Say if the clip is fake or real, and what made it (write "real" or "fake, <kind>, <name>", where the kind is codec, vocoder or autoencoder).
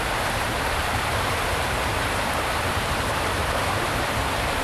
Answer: fake, vocoder, BigVGAN v2